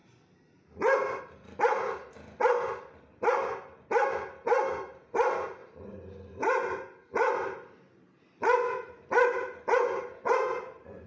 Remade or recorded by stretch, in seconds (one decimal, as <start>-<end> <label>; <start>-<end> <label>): 0.0-5.6 recorded; 5.6-6.4 remade; 6.4-11.1 recorded